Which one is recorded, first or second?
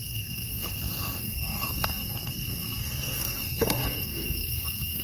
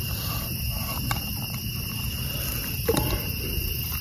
second